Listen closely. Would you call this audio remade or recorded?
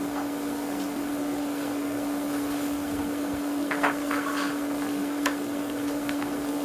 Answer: remade